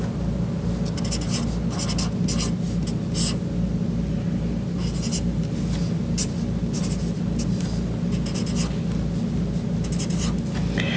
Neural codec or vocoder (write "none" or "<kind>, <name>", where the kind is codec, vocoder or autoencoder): none